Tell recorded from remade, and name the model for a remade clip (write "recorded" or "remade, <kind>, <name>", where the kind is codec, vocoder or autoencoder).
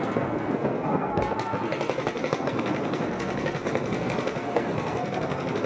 remade, codec, SNAC